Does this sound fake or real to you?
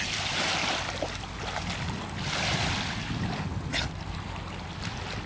real